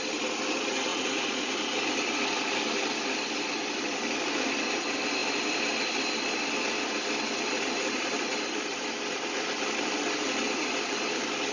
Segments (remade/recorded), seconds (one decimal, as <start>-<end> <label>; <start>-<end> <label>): 0.0-0.9 recorded; 0.9-1.5 remade; 1.5-11.5 recorded